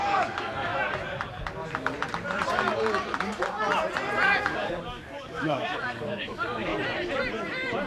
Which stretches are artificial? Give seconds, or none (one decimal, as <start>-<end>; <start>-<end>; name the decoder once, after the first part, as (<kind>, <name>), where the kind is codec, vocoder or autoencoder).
0.0-0.7 (codec, DAC); 4.4-6.7